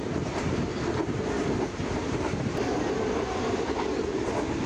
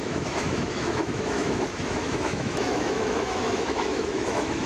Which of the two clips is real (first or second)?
first